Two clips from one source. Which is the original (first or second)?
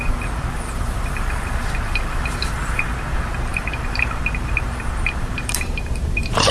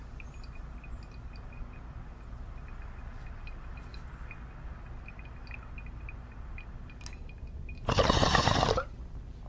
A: second